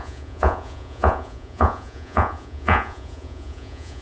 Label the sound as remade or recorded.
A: remade